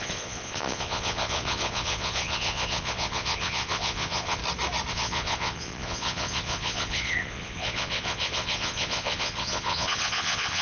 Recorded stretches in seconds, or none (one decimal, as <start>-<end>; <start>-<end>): 4.4-4.9